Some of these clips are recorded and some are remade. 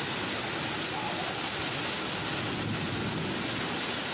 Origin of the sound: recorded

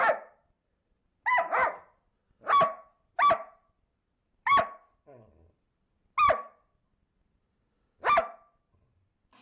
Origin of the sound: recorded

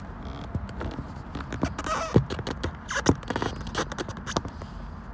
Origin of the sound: recorded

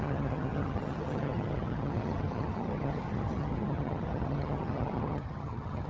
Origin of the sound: remade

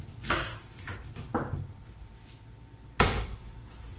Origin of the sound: recorded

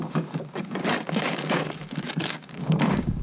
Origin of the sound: remade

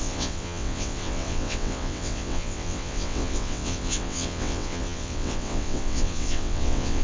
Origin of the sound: remade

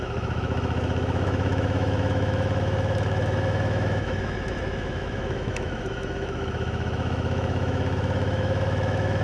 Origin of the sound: remade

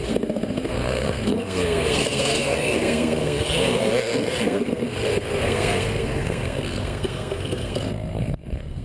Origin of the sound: remade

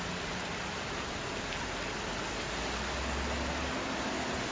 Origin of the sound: recorded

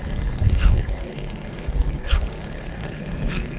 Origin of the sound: remade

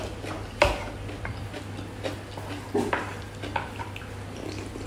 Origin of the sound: recorded